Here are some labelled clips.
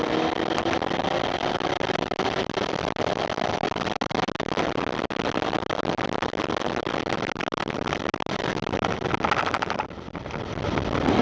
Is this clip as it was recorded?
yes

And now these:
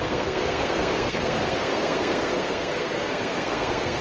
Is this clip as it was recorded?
no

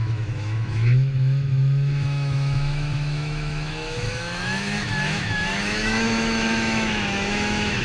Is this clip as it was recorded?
no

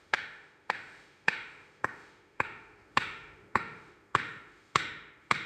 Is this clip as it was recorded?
no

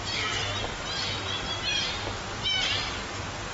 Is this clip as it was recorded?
yes